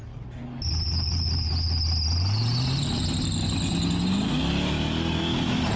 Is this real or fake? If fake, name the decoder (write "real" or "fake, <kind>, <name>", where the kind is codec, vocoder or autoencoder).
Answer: real